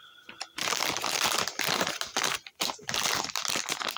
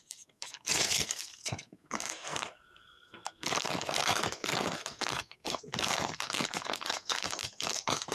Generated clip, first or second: second